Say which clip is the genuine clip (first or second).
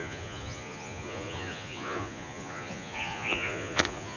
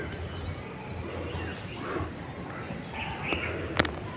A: second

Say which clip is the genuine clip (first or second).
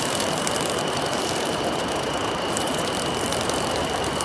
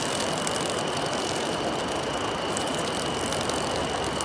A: second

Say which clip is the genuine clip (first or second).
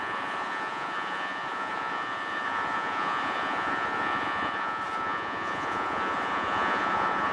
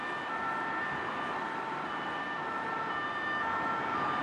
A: second